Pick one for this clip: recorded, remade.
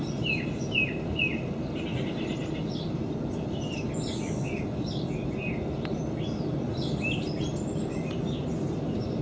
recorded